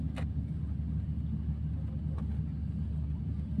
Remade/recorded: recorded